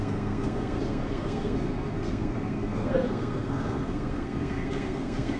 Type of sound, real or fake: fake